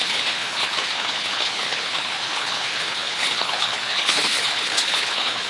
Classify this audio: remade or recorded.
remade